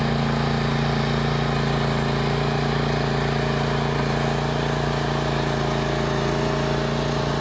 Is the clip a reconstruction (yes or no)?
no